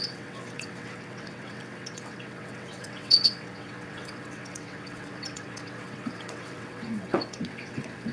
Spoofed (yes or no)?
yes